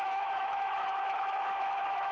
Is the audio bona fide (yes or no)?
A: no